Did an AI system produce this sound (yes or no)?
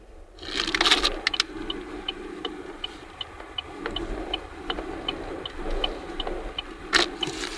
no